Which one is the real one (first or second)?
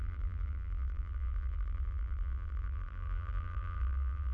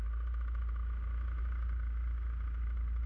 second